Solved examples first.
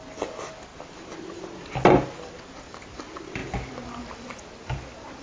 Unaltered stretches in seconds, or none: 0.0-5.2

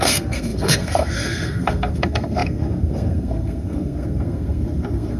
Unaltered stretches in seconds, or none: none

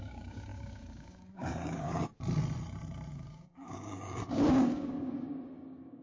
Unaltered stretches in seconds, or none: 2.1-3.1

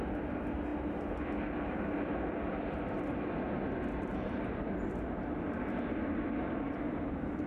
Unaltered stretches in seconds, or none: 0.0-7.5